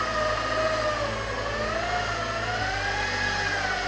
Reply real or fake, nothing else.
real